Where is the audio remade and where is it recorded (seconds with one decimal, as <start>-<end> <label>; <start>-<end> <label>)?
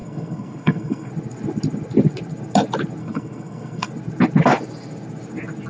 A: 0.0-1.1 remade; 1.1-3.0 recorded; 3.0-3.9 remade; 3.9-5.7 recorded